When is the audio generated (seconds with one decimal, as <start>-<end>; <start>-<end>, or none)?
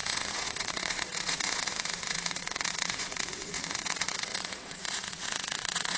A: 0.0-6.0